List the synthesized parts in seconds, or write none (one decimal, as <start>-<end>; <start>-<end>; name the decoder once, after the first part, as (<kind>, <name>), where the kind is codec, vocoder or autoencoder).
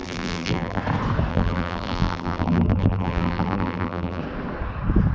0.0-0.8 (vocoder, BigVGAN v2); 1.3-4.2